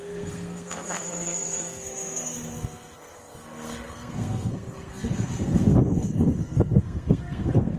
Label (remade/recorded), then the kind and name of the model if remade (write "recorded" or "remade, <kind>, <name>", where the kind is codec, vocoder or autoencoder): remade, codec, SNAC